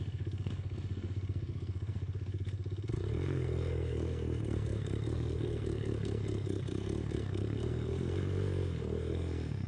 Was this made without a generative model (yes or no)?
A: no